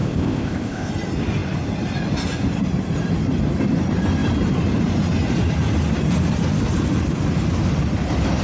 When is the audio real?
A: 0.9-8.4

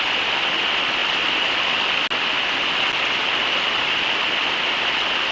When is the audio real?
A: 0.0-5.3

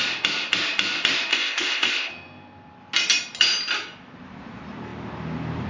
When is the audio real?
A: 0.0-1.3; 2.1-5.7